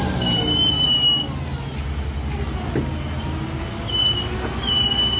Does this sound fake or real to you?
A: real